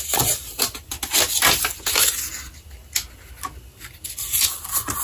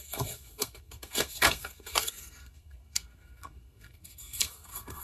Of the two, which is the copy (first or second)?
second